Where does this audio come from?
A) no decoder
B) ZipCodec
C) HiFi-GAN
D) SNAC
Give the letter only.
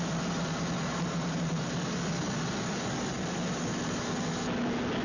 A